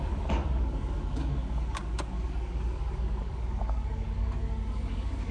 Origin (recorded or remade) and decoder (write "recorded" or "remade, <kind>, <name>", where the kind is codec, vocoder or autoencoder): remade, codec, DAC